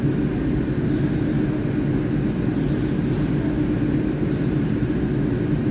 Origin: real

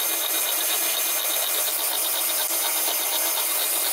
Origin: real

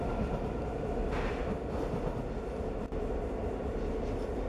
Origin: real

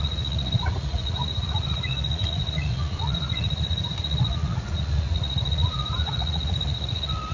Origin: fake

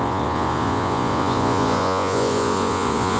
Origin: fake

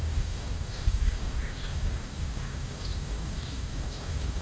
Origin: fake